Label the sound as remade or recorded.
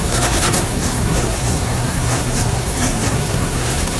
remade